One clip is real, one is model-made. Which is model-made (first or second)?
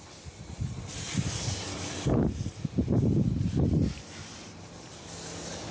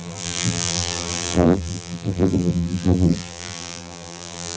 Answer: second